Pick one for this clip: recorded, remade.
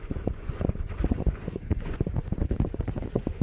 remade